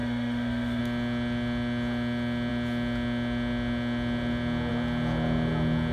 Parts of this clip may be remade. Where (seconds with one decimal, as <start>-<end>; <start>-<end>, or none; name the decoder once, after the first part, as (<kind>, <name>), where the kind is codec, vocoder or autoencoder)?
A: 0.0-0.8 (autoencoder, DAC-VAE)